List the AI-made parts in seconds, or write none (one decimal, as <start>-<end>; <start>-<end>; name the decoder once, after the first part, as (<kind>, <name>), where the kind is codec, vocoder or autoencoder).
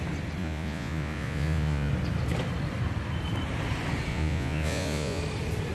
0.4-1.9 (vocoder, Vocos); 4.1-5.2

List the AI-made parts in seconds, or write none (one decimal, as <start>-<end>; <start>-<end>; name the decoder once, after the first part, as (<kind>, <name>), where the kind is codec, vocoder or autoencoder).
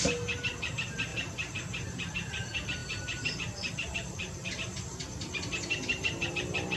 2.8-6.3 (vocoder, BigVGAN v2)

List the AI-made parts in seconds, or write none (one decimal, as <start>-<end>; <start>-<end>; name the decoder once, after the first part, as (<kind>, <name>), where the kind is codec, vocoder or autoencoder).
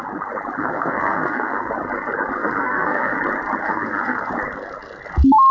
0.6-1.7 (codec, SNAC); 2.4-3.2; 3.6-4.3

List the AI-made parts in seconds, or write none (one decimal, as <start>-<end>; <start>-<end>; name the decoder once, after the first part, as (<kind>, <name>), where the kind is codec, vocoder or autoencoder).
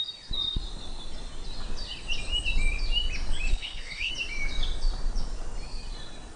3.5-4.1 (codec, SNAC)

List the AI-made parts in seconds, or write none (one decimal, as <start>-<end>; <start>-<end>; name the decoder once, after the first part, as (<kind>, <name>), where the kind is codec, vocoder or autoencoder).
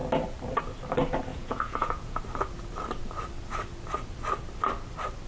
1.3-2.2 (vocoder, Vocos)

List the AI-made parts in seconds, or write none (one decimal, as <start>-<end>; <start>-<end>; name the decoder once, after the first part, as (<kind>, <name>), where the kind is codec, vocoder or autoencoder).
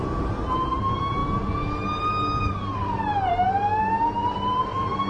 0.0-1.2 (vocoder, BigVGAN v2); 2.4-5.1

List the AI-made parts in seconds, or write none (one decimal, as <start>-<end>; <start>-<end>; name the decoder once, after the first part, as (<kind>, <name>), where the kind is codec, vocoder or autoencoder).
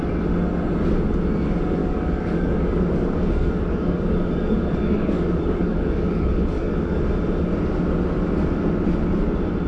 1.8-7.0 (codec, DAC)